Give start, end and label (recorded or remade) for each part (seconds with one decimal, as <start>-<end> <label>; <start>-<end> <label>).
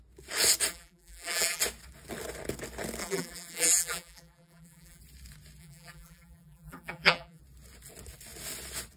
0.0-0.7 recorded; 0.7-1.6 remade; 1.6-3.0 recorded; 3.0-5.0 remade; 5.0-5.6 recorded; 5.6-7.4 remade; 7.4-9.0 recorded